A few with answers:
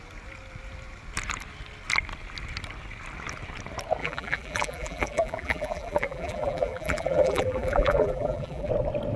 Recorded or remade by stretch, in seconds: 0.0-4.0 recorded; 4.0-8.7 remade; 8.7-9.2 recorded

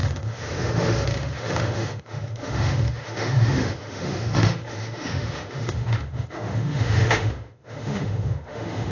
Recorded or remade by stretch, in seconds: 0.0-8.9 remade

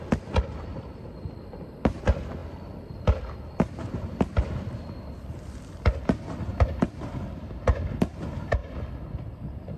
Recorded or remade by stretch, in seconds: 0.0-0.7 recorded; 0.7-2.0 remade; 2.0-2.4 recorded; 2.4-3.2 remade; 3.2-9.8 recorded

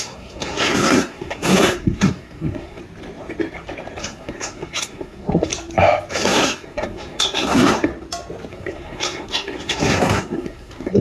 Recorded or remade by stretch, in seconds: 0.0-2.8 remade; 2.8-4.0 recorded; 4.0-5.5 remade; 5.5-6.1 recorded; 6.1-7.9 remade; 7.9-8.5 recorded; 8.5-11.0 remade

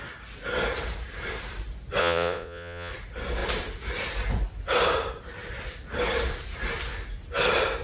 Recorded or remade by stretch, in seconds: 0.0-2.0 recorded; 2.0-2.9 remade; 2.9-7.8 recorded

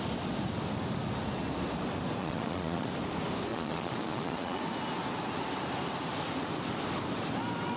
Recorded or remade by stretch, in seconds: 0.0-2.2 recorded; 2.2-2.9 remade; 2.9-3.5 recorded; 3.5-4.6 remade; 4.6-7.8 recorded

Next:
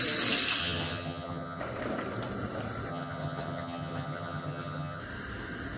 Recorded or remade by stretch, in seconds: 0.0-0.6 recorded; 0.6-1.6 remade; 1.6-2.9 recorded; 2.9-5.0 remade; 5.0-5.8 recorded